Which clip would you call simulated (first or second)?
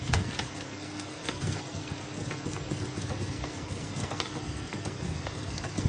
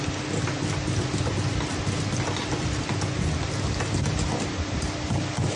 first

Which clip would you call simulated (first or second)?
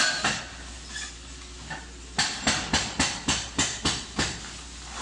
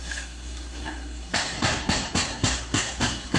second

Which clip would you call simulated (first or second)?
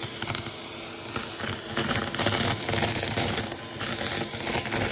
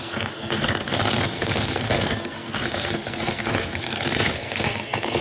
second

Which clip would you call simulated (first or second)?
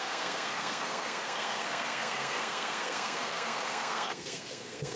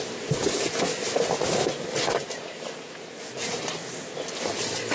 first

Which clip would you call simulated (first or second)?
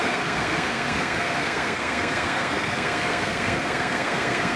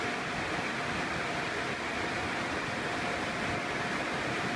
first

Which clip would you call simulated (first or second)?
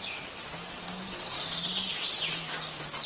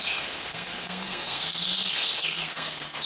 second